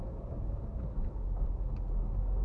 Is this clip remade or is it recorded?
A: recorded